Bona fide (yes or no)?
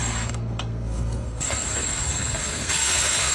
no